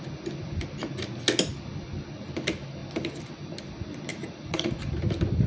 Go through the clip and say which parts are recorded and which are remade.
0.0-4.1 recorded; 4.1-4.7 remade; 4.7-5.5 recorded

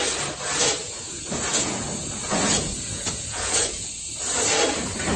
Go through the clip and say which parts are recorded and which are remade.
0.0-0.8 recorded; 0.8-3.9 remade; 3.9-5.2 recorded